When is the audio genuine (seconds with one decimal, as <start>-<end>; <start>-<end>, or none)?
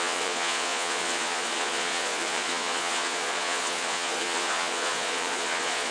none